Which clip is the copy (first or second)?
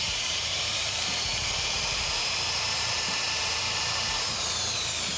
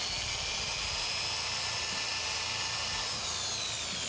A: first